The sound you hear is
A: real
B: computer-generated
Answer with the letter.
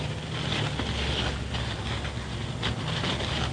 A